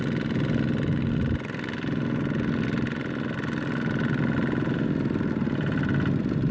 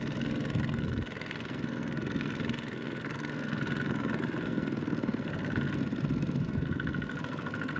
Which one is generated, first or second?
second